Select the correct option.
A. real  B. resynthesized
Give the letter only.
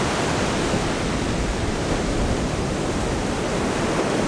A